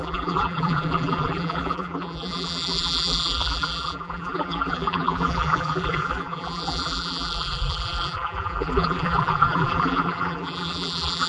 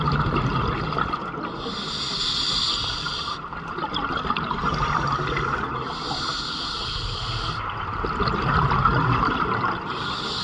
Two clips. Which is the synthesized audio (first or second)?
first